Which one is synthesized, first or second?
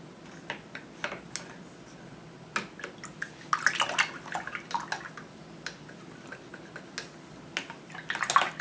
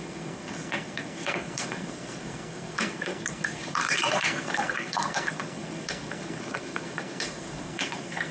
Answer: second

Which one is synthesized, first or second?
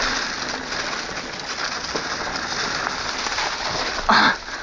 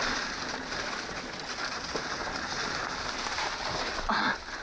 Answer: second